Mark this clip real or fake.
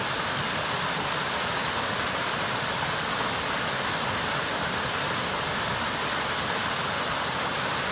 real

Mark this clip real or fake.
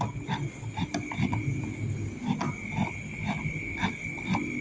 real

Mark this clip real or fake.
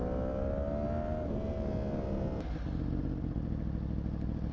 real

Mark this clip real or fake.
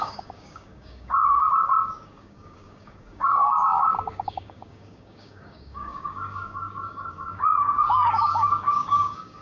fake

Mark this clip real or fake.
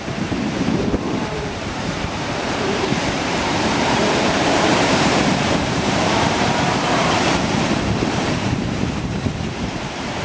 fake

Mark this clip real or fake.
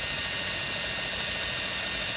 real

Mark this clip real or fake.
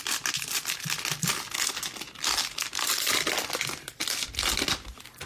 real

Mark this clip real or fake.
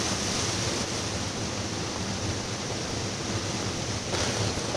real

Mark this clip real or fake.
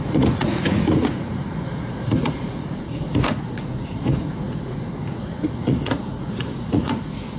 fake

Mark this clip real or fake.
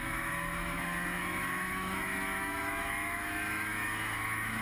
fake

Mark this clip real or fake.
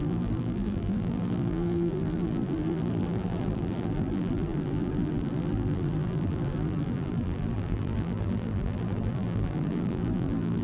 fake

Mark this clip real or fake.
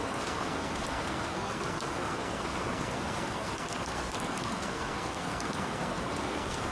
fake